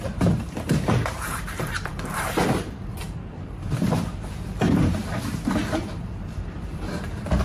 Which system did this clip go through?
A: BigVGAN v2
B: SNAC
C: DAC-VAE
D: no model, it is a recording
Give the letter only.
A